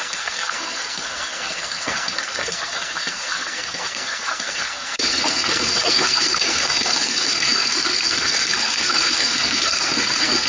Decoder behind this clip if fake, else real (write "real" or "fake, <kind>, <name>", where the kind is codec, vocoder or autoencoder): fake, codec, SNAC